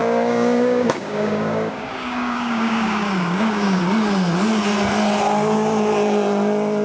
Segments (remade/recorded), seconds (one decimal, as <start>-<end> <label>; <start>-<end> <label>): 0.0-3.8 remade; 3.8-6.8 recorded